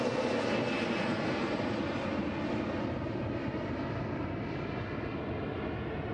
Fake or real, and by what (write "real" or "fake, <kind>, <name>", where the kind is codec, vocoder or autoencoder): real